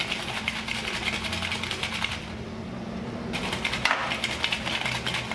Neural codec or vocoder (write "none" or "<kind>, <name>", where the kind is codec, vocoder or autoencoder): none